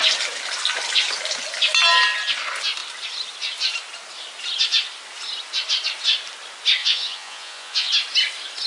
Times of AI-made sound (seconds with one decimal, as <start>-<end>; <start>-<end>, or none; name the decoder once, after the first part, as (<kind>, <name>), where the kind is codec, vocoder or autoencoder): 6.8-7.9 (vocoder, Vocos)